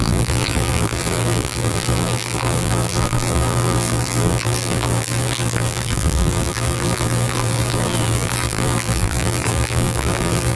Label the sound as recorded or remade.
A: remade